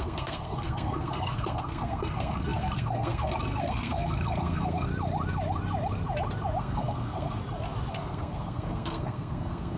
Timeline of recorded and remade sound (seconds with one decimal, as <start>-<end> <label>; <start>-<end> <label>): 0.0-4.9 remade; 4.9-6.6 recorded; 6.6-7.4 remade; 7.4-7.9 recorded; 7.9-9.8 remade